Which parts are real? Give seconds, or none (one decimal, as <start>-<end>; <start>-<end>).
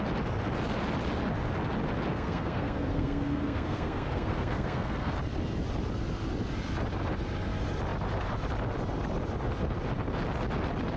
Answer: 0.0-2.1; 5.1-11.0